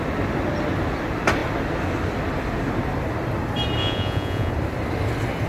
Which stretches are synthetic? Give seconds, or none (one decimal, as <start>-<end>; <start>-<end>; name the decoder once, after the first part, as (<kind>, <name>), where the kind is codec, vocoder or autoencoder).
3.8-4.5 (vocoder, Vocos)